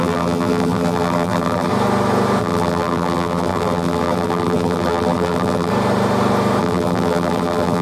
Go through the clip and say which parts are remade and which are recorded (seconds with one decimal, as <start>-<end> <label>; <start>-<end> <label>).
0.0-1.7 remade; 1.7-2.4 recorded; 2.4-5.7 remade; 5.7-6.6 recorded; 6.6-7.8 remade